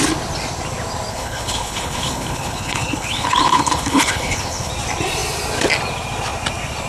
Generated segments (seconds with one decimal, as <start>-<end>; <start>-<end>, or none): 1.1-4.7